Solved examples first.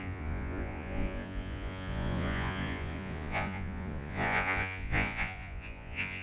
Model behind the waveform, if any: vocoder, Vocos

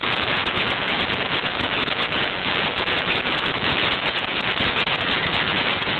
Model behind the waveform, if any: vocoder, Vocos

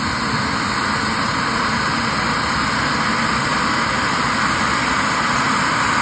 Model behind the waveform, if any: none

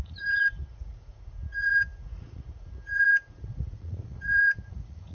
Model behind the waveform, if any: vocoder, Vocos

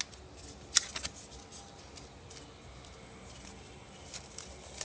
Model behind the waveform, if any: none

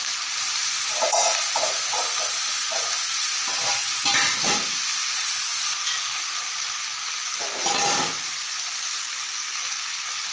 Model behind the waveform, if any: none